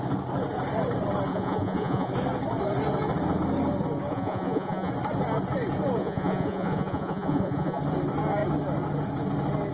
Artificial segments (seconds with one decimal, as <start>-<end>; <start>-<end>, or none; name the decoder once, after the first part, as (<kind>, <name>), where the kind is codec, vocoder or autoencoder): 1.3-2.1 (vocoder, Vocos); 4.1-4.9; 6.0-7.8